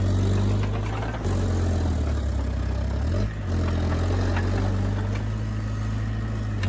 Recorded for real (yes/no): yes